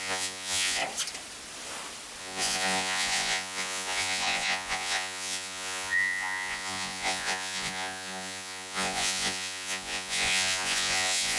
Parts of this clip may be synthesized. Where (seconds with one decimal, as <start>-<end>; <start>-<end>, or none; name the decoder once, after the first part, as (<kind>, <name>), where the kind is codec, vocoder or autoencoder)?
0.0-0.8 (vocoder, Vocos); 2.2-11.4